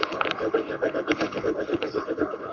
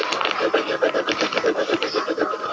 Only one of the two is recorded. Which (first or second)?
second